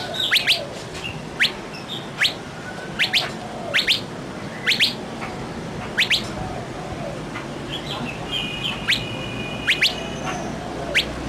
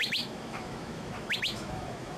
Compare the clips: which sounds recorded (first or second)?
first